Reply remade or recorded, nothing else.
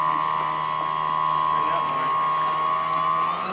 recorded